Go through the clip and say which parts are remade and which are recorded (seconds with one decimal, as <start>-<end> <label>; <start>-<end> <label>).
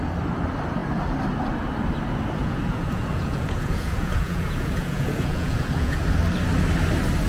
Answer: 0.0-2.4 recorded; 2.4-6.0 remade; 6.0-7.3 recorded